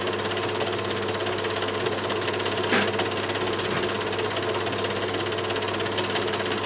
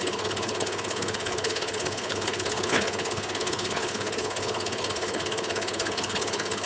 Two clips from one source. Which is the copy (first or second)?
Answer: second